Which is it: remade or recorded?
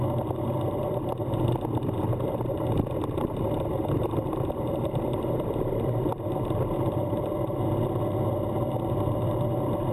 recorded